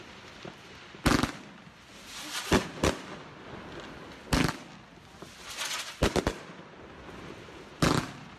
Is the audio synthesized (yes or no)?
no